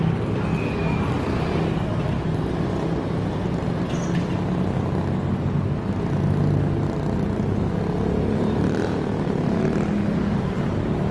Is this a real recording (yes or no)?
yes